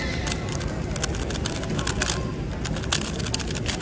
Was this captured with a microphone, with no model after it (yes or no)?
yes